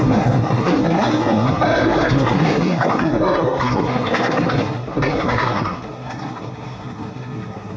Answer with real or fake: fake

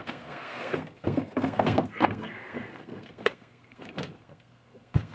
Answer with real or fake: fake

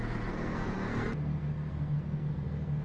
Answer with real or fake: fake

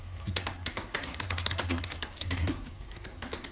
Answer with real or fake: fake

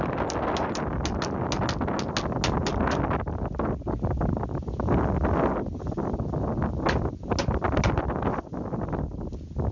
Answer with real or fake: real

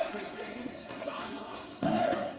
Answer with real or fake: fake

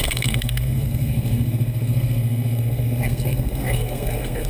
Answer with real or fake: fake